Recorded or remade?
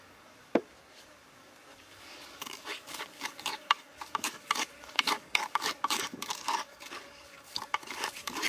remade